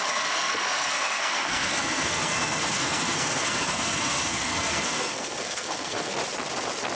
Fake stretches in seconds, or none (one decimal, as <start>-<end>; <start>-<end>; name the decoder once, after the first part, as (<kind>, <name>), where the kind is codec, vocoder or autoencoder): 0.0-6.1 (codec, SNAC)